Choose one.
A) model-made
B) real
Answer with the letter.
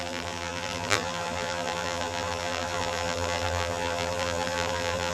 A